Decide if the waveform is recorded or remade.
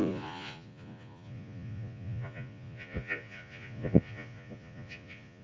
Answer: remade